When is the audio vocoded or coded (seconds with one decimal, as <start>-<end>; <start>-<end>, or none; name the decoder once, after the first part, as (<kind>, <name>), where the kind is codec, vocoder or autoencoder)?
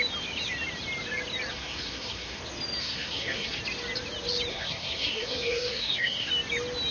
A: 1.5-2.4 (codec, SNAC); 2.8-3.6; 4.5-6.3